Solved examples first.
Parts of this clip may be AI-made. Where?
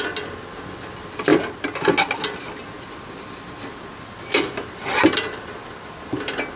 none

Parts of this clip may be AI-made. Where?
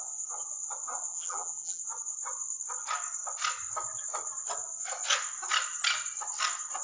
1.1-1.8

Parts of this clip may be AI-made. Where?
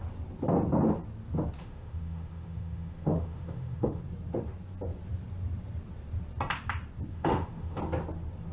1.6-4.0; 7.1-7.8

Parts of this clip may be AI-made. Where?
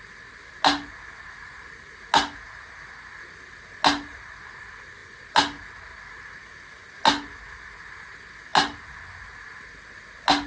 none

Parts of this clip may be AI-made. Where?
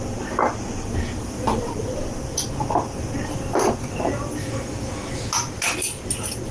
4.4-5.3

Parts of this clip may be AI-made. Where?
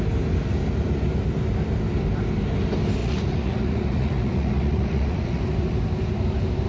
3.0-5.4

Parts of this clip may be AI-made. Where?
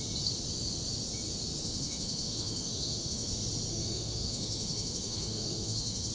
1.6-3.3; 3.7-6.1